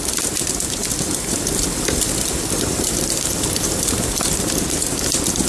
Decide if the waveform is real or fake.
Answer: fake